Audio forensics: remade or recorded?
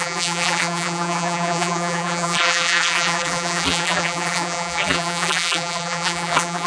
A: remade